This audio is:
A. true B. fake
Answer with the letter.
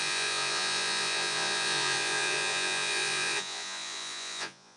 B